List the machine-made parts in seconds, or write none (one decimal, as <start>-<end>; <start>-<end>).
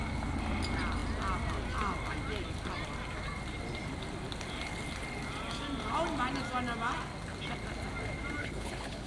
8.4-9.1